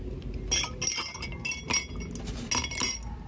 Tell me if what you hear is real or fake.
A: real